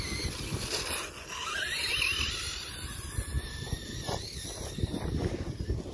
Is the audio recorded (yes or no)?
yes